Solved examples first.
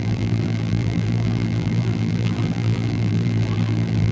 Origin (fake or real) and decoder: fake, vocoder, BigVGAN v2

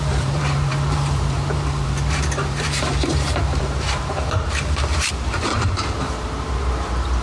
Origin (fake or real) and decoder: fake, vocoder, BigVGAN v2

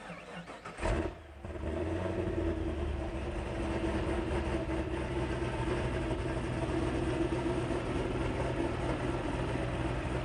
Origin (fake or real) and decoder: real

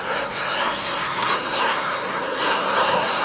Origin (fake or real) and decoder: fake, codec, SNAC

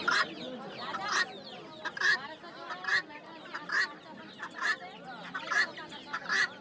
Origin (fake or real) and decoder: real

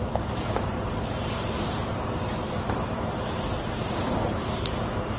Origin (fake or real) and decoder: fake, vocoder, BigVGAN v2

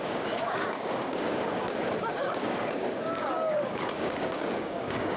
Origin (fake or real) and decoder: fake, codec, DAC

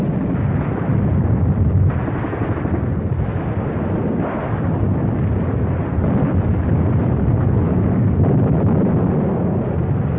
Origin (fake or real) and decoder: real